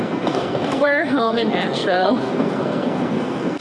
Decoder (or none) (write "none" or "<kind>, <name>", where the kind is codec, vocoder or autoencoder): codec, SNAC